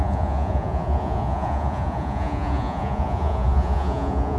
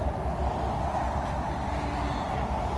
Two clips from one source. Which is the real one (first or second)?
second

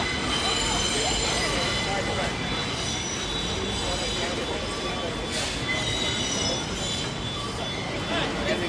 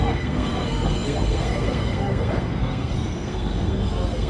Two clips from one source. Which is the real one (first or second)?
first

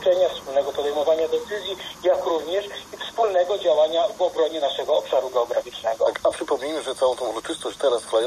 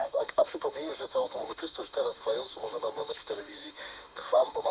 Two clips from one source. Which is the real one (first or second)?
first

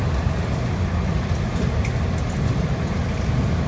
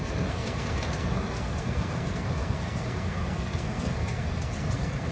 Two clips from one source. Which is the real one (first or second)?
first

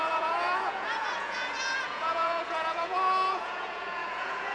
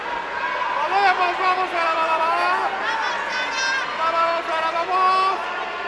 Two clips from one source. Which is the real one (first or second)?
second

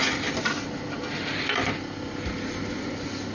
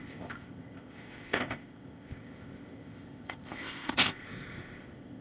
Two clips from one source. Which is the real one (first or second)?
first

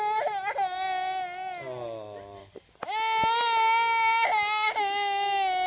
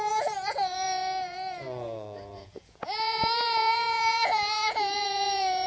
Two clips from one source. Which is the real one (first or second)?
first